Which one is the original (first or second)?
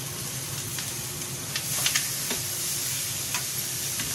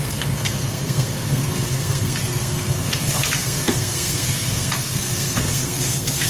first